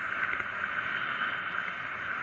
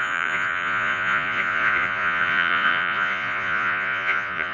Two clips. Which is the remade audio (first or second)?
second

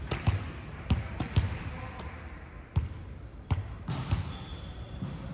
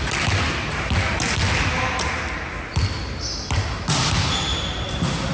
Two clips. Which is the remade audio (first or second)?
first